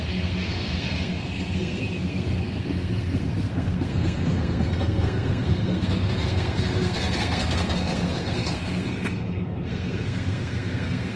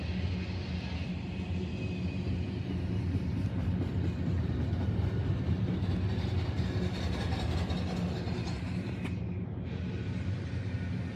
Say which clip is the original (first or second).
second